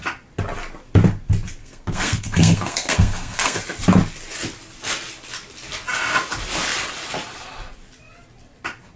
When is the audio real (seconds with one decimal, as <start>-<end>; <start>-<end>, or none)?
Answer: 0.0-1.6; 3.6-9.0